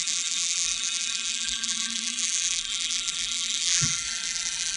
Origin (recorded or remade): remade